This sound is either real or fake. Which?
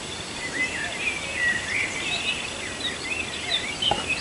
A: real